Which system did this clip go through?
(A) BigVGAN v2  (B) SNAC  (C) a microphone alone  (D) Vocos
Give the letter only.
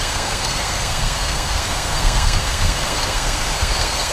B